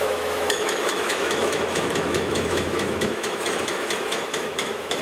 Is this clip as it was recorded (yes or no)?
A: no